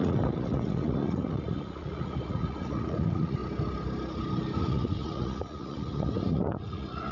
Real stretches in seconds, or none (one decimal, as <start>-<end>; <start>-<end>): 3.4-4.6